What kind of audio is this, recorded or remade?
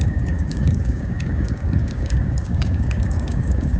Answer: remade